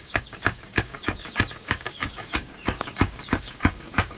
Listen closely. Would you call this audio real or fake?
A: fake